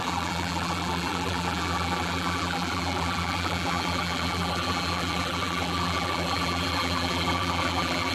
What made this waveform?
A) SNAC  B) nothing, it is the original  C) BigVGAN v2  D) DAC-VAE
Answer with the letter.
C